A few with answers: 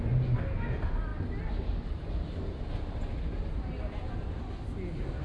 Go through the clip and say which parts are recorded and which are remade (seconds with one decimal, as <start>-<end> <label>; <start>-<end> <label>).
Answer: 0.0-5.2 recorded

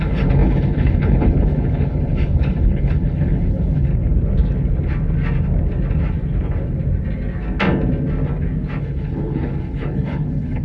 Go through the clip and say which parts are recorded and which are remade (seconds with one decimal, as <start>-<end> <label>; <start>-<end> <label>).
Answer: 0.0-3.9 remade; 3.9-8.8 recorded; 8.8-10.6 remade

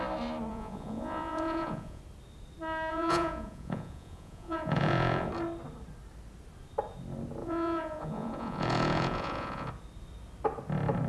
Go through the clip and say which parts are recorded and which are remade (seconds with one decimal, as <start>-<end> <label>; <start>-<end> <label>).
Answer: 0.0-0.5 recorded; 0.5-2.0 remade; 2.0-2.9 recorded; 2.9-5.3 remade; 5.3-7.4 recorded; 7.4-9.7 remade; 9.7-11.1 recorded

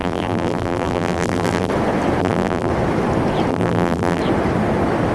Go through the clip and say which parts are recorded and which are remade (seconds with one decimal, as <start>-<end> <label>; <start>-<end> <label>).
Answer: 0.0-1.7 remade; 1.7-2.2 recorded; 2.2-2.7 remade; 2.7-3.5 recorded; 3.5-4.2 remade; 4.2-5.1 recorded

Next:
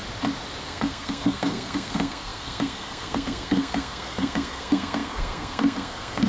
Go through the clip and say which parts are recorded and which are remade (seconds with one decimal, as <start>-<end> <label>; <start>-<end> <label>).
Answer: 0.0-0.6 recorded; 0.6-6.3 remade

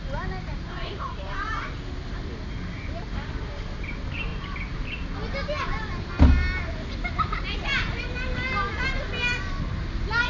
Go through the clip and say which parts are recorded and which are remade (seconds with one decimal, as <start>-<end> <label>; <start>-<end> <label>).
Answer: 0.0-10.3 recorded

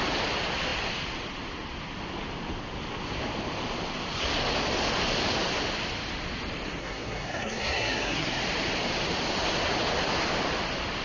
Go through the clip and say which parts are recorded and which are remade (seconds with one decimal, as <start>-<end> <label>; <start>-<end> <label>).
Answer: 0.0-6.8 recorded; 6.8-8.4 remade; 8.4-11.0 recorded